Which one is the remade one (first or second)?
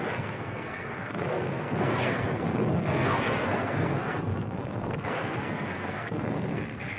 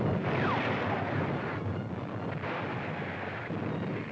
first